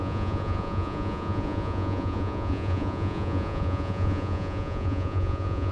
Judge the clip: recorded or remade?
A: remade